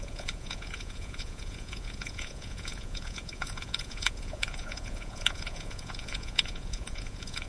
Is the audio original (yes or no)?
no